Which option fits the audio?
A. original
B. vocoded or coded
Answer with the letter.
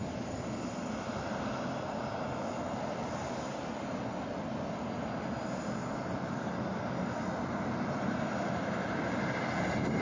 A